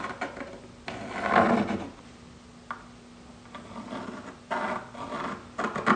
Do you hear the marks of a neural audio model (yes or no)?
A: no